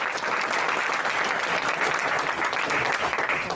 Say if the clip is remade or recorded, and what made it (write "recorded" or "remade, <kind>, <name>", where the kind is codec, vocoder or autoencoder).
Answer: recorded